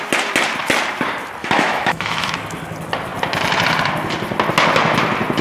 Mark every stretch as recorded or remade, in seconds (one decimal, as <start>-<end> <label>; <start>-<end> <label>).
0.0-1.4 recorded; 1.4-2.3 remade; 2.3-5.4 recorded